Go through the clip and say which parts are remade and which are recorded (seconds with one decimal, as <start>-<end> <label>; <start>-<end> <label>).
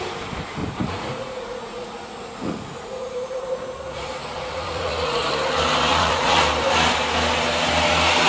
0.0-0.6 recorded; 0.6-5.3 remade; 5.3-5.9 recorded; 5.9-6.4 remade; 6.4-8.3 recorded